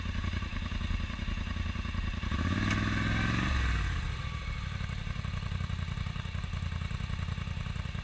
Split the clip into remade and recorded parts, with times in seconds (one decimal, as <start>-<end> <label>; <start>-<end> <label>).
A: 0.0-8.0 recorded